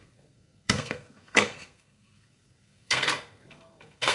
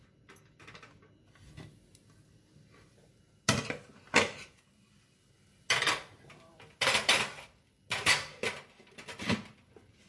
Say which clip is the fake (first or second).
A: first